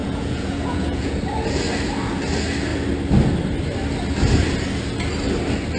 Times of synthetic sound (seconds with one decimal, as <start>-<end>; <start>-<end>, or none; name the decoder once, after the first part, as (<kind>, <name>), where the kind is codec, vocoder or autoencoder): 0.0-1.2 (vocoder, Vocos)